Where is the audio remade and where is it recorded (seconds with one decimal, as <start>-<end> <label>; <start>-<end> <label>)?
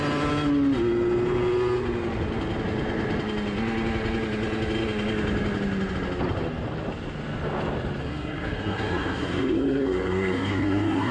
0.0-8.0 recorded; 8.0-11.1 remade